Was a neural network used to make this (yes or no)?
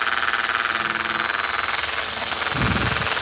no